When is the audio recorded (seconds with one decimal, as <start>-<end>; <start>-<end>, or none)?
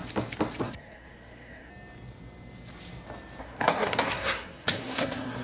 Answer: 0.0-0.6; 1.7-3.4